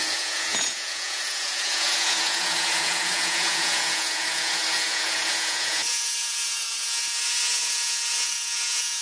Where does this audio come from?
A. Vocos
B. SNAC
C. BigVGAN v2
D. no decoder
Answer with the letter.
A